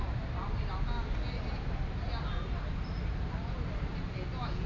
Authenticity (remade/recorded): recorded